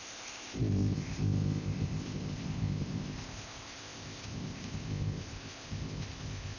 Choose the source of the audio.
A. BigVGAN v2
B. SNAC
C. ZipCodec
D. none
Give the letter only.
C